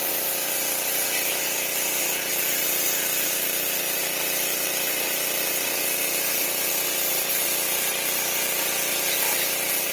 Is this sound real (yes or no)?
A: yes